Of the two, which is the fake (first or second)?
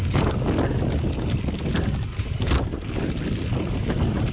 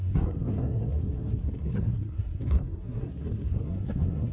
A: second